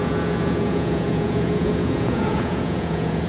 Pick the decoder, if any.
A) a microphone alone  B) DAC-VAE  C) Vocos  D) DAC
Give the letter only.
C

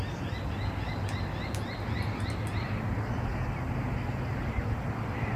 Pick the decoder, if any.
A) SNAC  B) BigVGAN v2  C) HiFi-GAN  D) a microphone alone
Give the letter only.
D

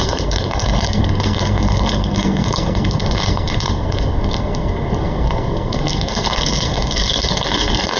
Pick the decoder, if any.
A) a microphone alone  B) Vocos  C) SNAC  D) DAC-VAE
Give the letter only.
C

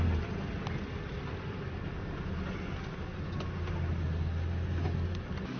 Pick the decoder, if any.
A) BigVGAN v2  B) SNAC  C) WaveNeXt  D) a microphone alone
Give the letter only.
D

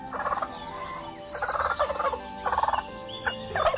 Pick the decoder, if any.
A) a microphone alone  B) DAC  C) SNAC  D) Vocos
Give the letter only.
A